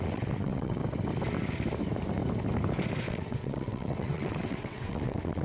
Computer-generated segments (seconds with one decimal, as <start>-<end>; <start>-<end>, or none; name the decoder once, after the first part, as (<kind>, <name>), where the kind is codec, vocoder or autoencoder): 0.0-0.8 (vocoder, WaveNeXt); 3.1-5.4